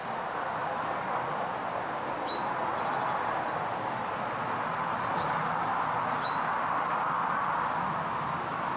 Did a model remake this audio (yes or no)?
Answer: no